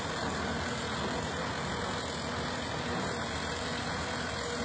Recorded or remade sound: recorded